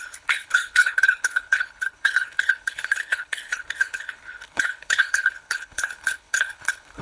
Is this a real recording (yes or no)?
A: no